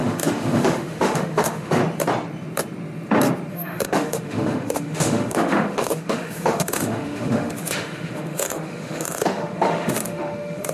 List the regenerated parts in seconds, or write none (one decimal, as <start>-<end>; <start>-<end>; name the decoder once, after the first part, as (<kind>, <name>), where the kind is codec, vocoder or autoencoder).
0.0-1.8 (autoencoder, DAC-VAE); 3.5-10.7